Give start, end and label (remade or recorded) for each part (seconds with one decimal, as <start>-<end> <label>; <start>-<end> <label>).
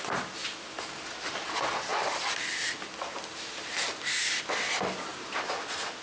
0.0-6.0 recorded